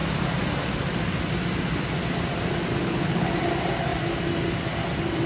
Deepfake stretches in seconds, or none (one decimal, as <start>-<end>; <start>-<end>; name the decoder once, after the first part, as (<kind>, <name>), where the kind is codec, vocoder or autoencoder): 2.8-3.3 (codec, HILCodec)